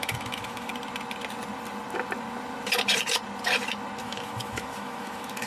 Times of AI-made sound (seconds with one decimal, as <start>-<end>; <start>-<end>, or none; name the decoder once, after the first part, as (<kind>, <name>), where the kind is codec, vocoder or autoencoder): 0.0-0.7 (autoencoder, DAC-VAE); 4.0-5.5